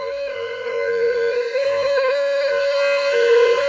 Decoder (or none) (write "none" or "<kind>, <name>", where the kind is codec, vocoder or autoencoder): codec, SNAC